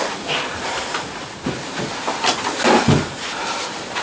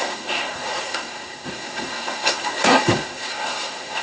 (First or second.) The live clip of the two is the first